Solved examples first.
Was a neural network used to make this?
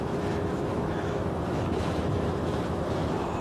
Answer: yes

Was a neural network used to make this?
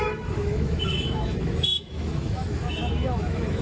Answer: yes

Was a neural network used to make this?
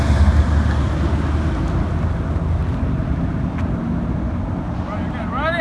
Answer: no